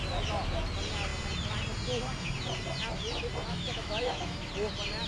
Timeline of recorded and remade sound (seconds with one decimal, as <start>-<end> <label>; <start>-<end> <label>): 0.0-3.5 recorded; 3.5-4.5 remade; 4.5-5.1 recorded